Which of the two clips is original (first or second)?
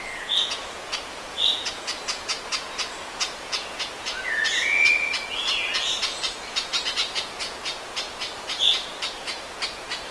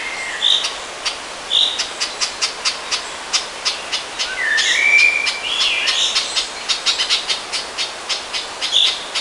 second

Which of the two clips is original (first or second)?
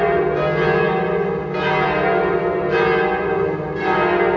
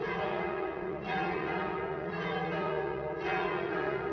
first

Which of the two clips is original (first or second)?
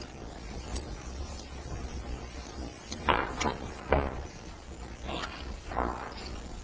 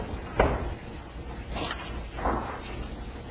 second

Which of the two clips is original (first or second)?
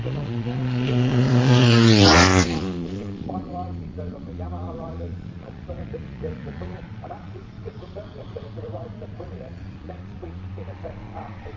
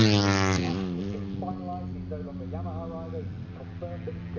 second